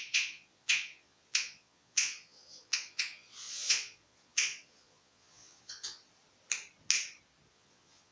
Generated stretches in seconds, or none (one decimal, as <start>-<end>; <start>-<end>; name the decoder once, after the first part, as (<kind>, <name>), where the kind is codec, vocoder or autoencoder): 0.0-6.0 (vocoder, Vocos); 7.5-8.1

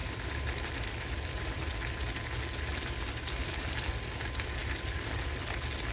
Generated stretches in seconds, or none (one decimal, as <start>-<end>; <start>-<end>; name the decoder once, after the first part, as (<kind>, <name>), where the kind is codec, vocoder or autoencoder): 0.0-1.7 (vocoder, BigVGAN v2); 2.7-3.9; 4.6-5.4